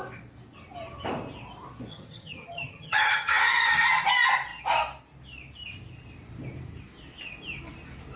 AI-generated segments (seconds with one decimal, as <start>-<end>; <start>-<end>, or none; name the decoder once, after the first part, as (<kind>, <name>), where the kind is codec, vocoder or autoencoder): 1.9-3.7 (vocoder, HiFi-GAN)